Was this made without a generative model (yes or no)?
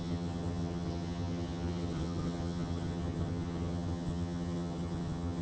no